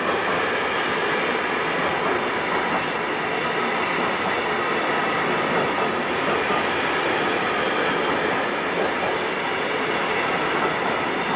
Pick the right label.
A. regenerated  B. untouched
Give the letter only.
B